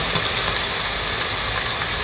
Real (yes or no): yes